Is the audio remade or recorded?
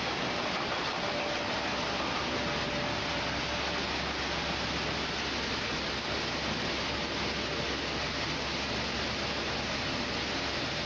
recorded